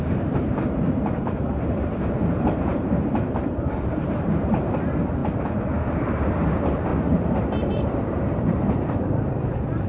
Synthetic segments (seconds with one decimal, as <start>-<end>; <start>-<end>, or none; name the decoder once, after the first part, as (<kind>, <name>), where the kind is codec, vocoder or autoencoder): 0.0-5.2 (vocoder, BigVGAN v2); 6.1-6.9; 7.4-9.9